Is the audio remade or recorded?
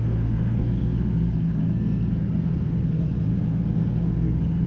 remade